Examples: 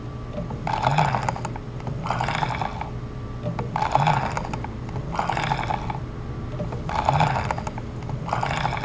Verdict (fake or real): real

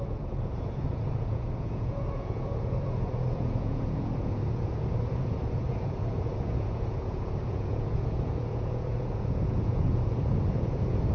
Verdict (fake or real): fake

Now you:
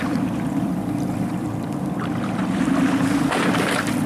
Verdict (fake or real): fake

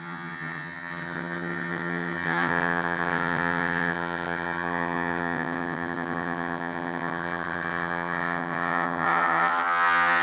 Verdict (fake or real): fake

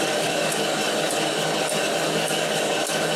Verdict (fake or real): fake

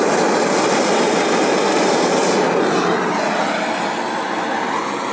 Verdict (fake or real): real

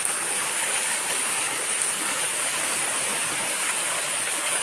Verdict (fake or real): fake